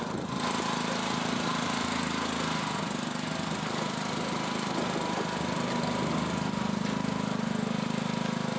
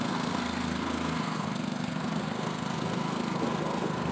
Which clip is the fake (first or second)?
second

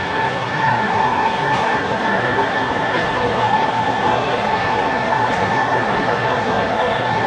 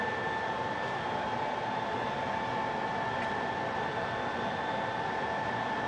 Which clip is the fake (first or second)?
first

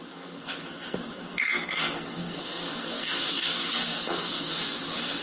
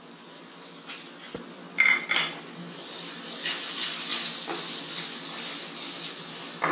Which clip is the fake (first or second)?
first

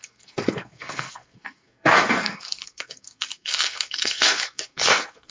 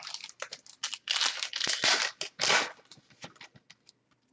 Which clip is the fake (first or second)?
first